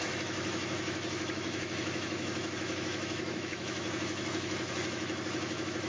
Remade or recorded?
remade